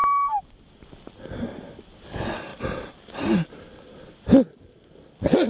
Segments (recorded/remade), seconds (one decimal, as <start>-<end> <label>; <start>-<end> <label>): 0.0-2.5 recorded; 2.5-3.6 remade; 3.6-5.5 recorded